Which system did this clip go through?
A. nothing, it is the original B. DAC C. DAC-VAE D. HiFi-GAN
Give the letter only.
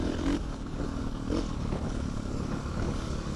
B